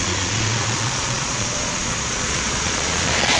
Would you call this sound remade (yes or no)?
yes